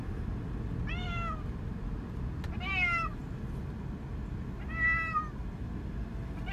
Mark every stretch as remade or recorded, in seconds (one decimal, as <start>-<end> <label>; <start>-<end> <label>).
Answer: 0.0-6.5 recorded